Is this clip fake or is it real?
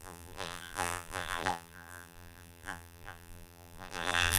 fake